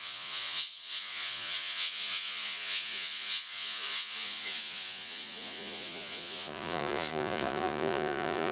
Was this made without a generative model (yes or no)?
no